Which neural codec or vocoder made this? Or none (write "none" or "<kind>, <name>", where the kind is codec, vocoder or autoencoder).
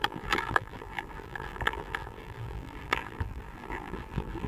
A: vocoder, BigVGAN v2